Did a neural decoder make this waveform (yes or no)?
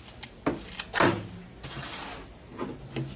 no